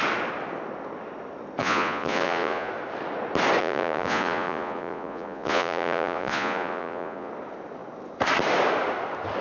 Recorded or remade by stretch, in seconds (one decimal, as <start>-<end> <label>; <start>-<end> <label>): 0.0-1.6 recorded; 1.6-2.7 remade; 2.7-3.6 recorded; 3.6-7.3 remade; 7.3-9.4 recorded